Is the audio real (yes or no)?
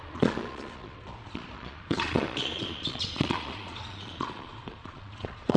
no